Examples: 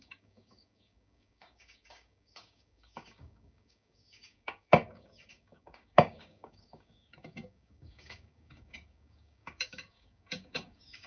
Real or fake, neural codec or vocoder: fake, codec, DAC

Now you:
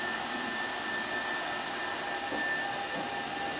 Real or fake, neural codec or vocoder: real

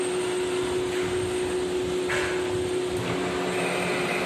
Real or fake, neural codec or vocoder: real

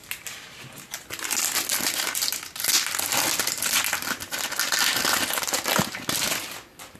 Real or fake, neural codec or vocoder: real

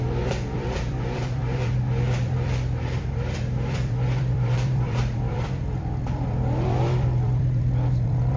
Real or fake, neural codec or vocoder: fake, vocoder, BigVGAN v2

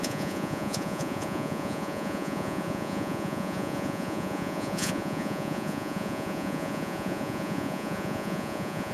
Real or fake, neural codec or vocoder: fake, vocoder, Vocos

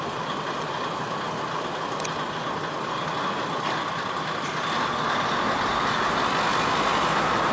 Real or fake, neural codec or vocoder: real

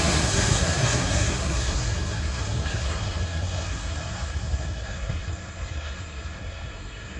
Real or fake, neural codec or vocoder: fake, codec, SNAC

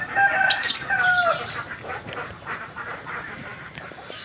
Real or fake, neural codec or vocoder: fake, vocoder, BigVGAN v2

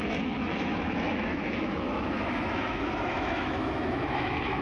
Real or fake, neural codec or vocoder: fake, autoencoder, DAC-VAE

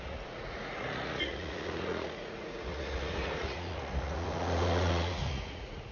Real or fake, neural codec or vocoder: fake, vocoder, Vocos